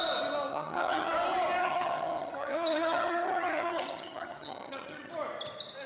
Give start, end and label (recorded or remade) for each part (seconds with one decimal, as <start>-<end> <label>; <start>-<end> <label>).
0.0-0.5 recorded; 0.5-1.1 remade; 1.1-1.6 recorded; 1.6-5.1 remade; 5.1-5.9 recorded